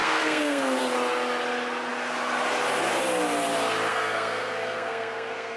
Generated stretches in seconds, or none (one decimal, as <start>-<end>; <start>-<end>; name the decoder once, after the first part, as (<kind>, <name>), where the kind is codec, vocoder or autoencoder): 0.0-0.8 (codec, SNAC); 3.9-5.6

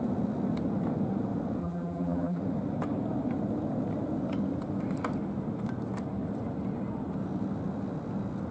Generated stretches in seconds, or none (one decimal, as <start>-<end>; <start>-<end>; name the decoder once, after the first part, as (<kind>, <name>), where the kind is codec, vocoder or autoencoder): 1.6-2.4 (vocoder, BigVGAN v2)

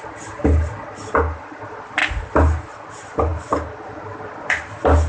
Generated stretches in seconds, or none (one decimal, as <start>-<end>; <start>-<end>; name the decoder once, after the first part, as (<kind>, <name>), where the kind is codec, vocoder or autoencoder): none

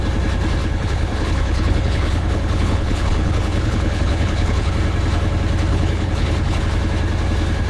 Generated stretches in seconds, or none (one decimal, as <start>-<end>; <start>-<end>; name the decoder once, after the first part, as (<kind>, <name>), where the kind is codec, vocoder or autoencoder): 0.6-4.7 (codec, HILCodec); 5.7-6.6

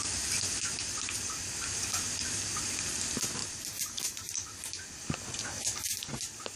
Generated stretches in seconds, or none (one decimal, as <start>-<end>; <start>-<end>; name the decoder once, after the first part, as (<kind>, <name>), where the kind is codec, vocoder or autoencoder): 3.4-4.3 (vocoder, BigVGAN v2)